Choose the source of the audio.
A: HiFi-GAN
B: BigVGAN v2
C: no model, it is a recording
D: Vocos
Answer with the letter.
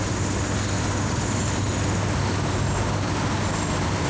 C